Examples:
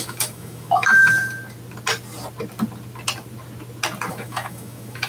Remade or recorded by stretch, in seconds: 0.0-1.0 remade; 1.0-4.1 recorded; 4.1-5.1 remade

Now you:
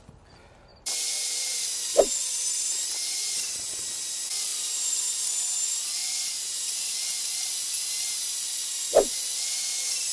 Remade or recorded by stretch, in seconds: 0.0-0.7 recorded; 0.7-2.0 remade; 2.0-4.5 recorded; 4.5-5.1 remade; 5.1-6.0 recorded; 6.0-6.9 remade; 6.9-10.1 recorded

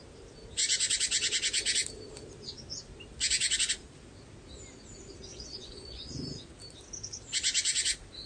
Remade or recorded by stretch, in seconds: 0.0-5.3 recorded; 5.3-6.5 remade; 6.5-8.3 recorded

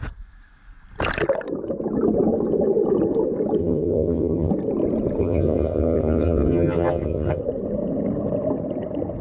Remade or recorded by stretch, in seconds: 0.0-3.6 recorded; 3.6-4.5 remade; 4.5-5.2 recorded; 5.2-7.4 remade; 7.4-9.2 recorded